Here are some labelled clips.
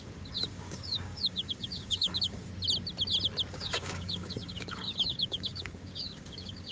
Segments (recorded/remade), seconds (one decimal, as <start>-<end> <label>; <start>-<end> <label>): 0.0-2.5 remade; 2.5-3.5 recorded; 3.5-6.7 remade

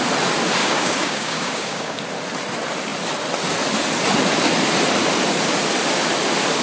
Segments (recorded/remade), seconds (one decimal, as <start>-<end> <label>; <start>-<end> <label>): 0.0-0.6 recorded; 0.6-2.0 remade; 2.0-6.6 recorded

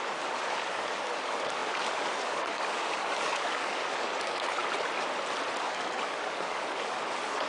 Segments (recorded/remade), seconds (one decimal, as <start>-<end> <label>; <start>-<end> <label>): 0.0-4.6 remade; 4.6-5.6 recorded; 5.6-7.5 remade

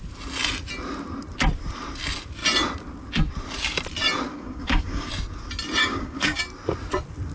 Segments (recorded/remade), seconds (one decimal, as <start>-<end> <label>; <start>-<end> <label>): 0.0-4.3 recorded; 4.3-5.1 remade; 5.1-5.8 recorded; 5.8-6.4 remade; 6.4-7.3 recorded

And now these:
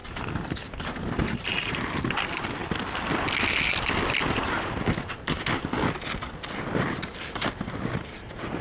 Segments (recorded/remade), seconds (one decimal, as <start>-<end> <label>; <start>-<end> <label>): 0.0-8.6 recorded

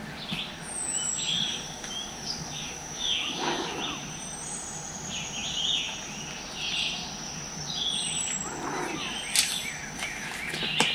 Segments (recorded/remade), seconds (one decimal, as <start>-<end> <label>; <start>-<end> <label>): 0.0-1.5 recorded; 1.5-3.8 remade; 3.8-10.9 recorded

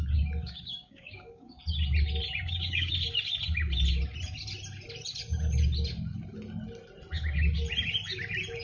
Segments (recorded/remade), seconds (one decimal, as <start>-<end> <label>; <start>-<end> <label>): 0.0-0.4 recorded; 0.4-1.6 remade; 1.6-2.4 recorded; 2.4-2.9 remade; 2.9-8.6 recorded